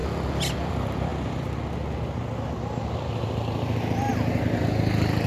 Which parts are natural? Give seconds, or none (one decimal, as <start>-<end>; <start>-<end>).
0.0-5.3